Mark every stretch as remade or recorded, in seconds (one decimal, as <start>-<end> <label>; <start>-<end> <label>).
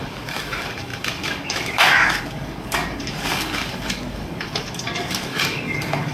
0.0-6.1 remade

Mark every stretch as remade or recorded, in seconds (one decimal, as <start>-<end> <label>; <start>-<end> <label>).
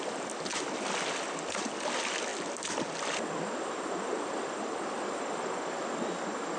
0.0-6.6 recorded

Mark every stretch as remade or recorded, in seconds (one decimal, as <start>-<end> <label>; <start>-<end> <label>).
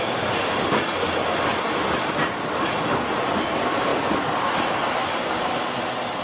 0.0-6.2 recorded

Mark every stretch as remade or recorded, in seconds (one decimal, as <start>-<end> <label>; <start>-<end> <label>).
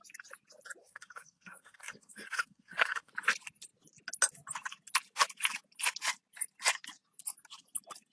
0.0-0.8 recorded; 0.8-3.1 remade; 3.1-8.1 recorded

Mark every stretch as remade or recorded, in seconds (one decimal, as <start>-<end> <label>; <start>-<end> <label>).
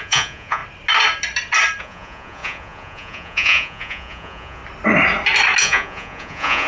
0.0-0.6 remade; 0.6-1.8 recorded; 1.8-4.6 remade; 4.6-5.6 recorded; 5.6-6.7 remade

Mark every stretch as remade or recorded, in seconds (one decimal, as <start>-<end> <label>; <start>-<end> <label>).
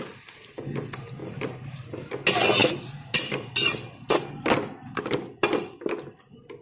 0.0-1.2 recorded; 1.2-2.1 remade; 2.1-6.6 recorded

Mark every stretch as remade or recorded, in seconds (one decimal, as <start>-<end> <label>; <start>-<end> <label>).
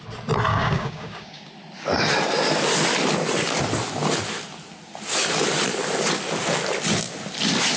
0.0-0.5 recorded; 0.5-1.5 remade; 1.5-7.8 recorded